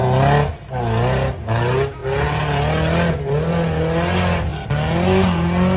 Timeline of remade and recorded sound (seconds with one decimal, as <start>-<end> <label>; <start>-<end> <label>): 0.0-5.8 recorded